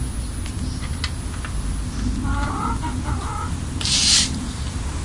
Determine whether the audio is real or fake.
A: real